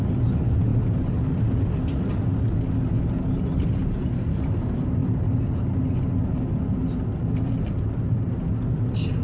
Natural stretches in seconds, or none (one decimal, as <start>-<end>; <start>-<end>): 0.0-9.2